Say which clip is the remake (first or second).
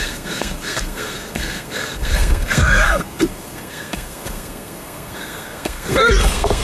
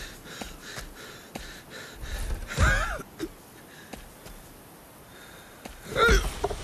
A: first